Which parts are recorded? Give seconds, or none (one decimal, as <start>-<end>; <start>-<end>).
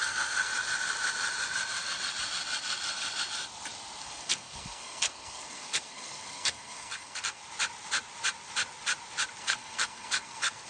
0.5-4.0; 7.4-9.4